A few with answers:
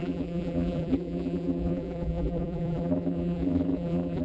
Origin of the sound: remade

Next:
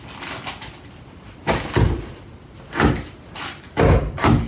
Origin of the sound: recorded